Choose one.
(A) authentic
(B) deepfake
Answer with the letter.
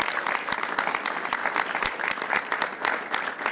A